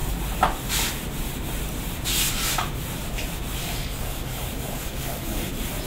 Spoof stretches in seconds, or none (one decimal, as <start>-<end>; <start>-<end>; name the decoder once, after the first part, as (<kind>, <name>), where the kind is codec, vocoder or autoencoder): 3.6-5.5 (codec, DAC)